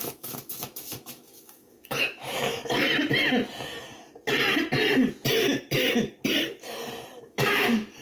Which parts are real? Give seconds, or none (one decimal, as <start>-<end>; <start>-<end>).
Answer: 2.9-7.2